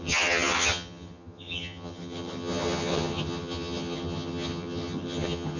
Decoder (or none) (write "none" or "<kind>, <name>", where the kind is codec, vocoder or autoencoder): vocoder, HiFi-GAN